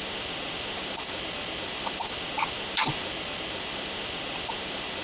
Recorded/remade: recorded